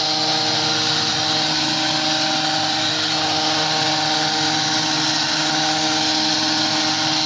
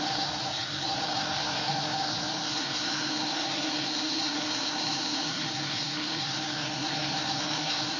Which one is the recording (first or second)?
first